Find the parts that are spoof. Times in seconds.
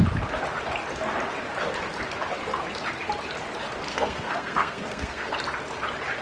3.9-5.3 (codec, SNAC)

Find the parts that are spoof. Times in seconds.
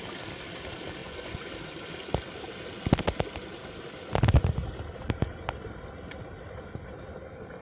1.0-1.5 (vocoder, Vocos)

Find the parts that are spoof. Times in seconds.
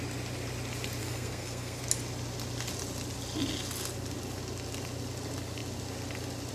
1.0-1.8 (codec, SNAC)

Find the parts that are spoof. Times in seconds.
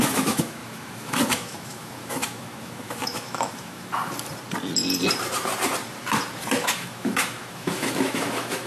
0.0-3.9 (autoencoder, DAC-VAE); 6.6-8.7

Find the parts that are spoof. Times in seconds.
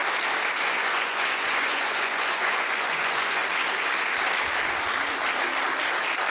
0.6-3.4 (vocoder, Vocos)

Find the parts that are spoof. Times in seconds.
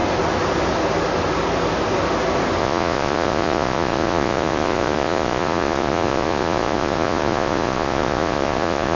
2.6-9.0 (vocoder, Vocos)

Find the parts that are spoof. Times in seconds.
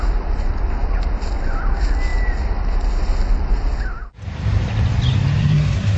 5.4-6.0 (codec, SNAC)